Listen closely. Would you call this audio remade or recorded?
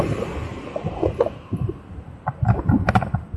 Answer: remade